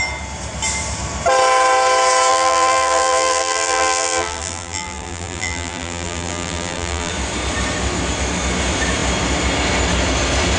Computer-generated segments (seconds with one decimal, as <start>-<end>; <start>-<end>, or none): 2.3-7.1